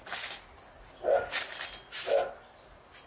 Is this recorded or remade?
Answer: recorded